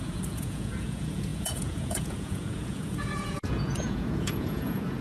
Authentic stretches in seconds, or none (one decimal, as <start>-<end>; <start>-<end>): none